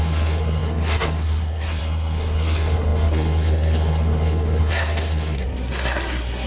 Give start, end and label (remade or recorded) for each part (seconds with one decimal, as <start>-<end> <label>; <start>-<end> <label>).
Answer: 0.0-6.5 remade